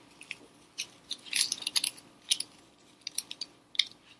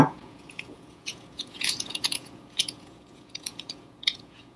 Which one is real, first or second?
first